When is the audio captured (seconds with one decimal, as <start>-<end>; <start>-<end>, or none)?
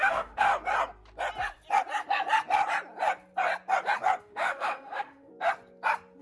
0.5-4.2; 5.3-6.2